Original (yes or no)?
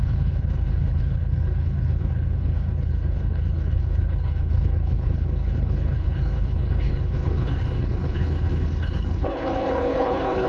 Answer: no